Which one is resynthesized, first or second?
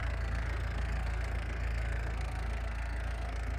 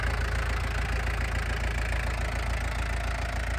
first